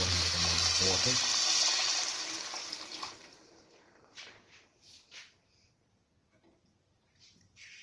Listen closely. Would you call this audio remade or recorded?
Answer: remade